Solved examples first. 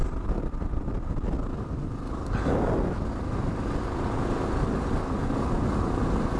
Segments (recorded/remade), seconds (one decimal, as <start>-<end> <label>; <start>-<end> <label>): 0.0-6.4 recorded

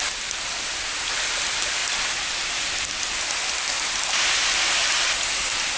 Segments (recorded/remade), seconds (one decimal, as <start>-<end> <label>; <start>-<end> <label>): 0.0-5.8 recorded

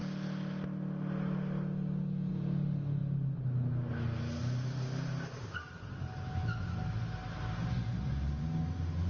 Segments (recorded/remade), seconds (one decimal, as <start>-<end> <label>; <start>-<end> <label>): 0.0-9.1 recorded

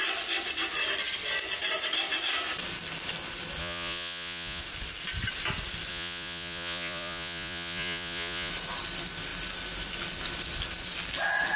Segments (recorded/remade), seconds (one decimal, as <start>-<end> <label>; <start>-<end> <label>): 0.0-3.6 recorded; 3.6-4.6 remade; 4.6-5.9 recorded; 5.9-8.5 remade; 8.5-11.6 recorded